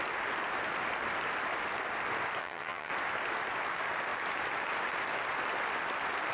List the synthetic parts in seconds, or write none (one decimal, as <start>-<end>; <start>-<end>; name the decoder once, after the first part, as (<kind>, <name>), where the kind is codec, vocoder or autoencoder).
2.4-2.9 (vocoder, HiFi-GAN)